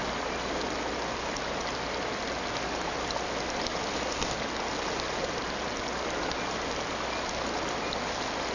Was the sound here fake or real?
real